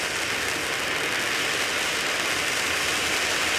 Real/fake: real